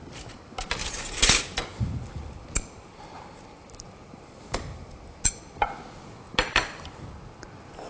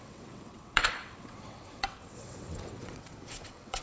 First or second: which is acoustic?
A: first